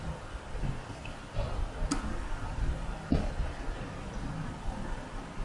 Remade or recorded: recorded